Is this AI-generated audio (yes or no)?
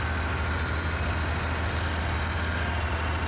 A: no